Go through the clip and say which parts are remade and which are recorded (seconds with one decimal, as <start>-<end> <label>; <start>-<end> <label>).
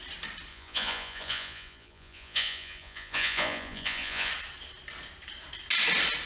0.0-0.5 recorded; 0.5-4.3 remade; 4.3-6.3 recorded